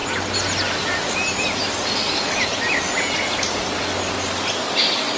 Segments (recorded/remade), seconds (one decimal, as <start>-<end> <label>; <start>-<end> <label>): 0.0-5.2 recorded